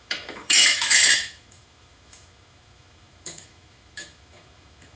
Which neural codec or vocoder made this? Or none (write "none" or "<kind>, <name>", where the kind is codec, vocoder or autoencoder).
autoencoder, DAC-VAE